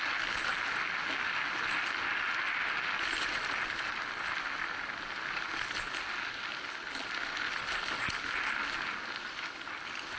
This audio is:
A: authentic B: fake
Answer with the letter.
A